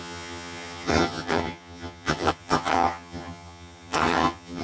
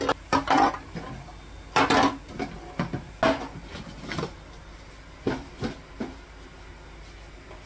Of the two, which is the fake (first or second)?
first